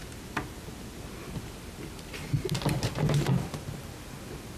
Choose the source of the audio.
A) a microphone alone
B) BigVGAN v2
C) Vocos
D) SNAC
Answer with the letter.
A